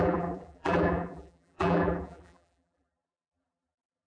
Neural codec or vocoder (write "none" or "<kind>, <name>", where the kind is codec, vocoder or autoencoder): vocoder, BigVGAN v2